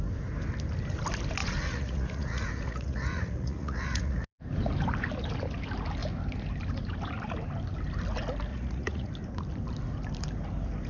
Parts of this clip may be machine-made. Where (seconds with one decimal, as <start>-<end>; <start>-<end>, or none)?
1.4-4.4; 8.5-9.1